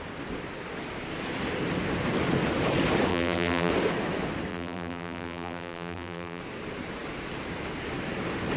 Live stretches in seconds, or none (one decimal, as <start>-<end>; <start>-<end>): 0.0-3.1; 3.7-4.5; 6.4-8.6